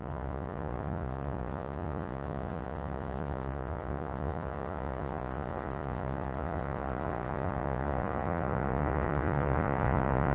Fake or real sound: fake